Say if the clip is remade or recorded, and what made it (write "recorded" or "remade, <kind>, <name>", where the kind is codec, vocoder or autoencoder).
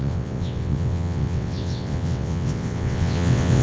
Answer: remade, vocoder, WaveNeXt